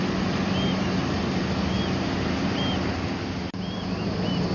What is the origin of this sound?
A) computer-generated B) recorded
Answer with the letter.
B